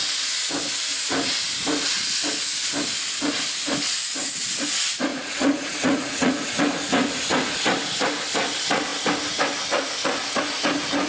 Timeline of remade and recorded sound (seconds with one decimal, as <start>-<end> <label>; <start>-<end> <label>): 0.0-5.1 recorded; 5.1-6.6 remade; 6.6-11.1 recorded